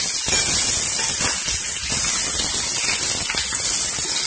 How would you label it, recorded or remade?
recorded